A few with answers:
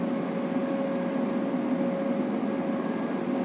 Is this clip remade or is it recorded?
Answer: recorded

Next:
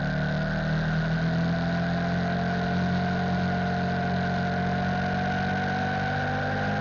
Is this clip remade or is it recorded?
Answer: recorded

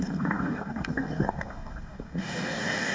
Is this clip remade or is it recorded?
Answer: remade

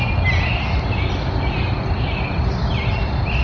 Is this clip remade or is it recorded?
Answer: recorded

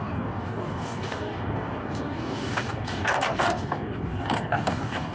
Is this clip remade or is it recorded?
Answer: remade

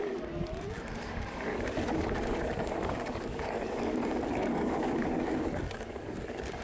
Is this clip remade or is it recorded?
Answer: remade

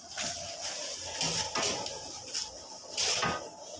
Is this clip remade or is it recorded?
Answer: recorded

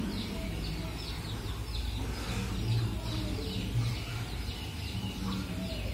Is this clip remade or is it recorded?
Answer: recorded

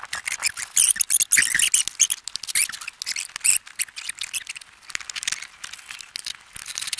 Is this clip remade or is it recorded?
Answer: recorded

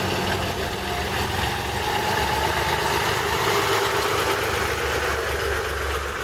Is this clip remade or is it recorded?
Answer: recorded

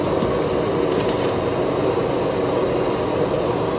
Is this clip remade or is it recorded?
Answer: recorded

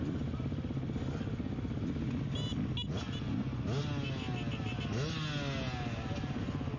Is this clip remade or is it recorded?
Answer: recorded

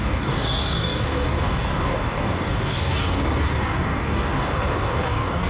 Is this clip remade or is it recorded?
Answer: remade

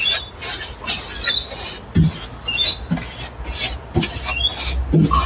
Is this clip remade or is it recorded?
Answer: recorded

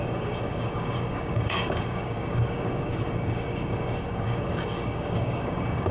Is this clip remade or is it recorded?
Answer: remade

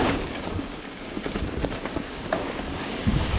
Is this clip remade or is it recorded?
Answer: remade